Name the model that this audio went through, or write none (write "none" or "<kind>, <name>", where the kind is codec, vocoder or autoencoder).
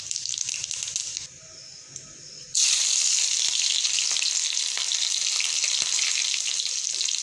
none